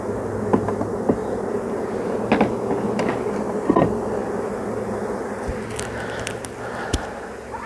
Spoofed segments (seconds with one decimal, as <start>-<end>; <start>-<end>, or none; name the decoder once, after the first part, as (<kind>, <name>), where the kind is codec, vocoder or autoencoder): none

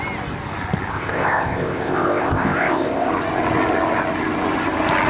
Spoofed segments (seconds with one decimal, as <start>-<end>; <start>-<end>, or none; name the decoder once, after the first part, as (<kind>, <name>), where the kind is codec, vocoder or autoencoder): 0.9-3.1 (codec, ZipCodec)